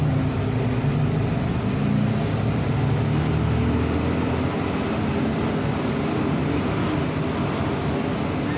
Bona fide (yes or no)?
yes